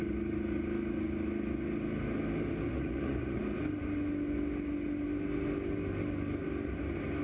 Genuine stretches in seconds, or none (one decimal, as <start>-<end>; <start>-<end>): 0.0-2.7; 3.4-7.2